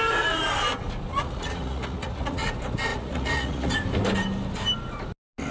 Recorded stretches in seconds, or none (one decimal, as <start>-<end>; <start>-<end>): 0.0-1.1; 2.5-2.9; 3.7-5.5